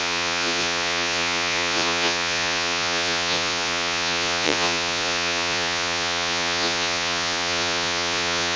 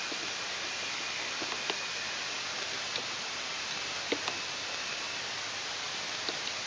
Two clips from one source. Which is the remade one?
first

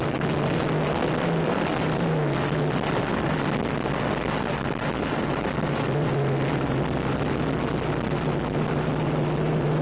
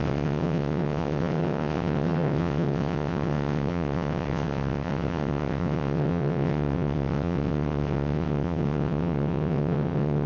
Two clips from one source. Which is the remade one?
second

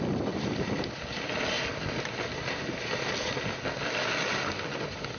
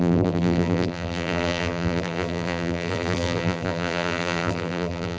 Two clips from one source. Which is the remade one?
second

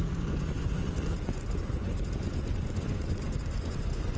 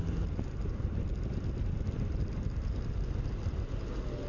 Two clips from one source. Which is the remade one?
first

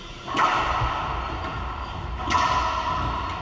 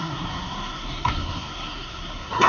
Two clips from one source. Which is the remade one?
second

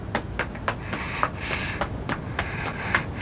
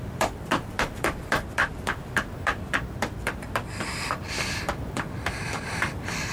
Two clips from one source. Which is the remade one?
second